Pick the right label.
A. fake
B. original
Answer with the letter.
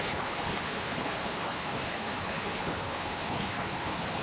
A